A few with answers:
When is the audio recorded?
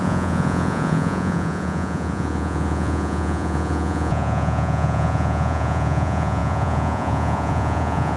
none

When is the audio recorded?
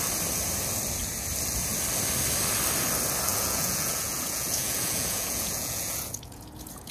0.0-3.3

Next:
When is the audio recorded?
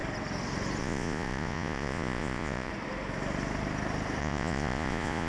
0.0-0.8; 2.7-4.2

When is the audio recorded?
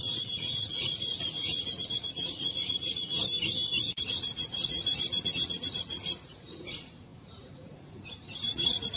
3.1-4.0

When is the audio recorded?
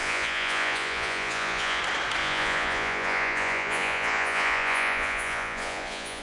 1.8-2.2